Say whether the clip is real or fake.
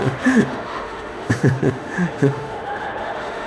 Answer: fake